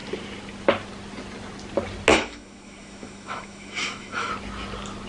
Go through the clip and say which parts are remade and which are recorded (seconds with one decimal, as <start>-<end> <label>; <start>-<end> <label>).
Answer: 0.0-2.1 recorded; 2.1-4.3 remade; 4.3-5.1 recorded